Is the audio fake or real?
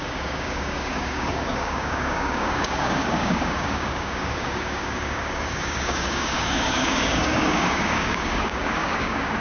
fake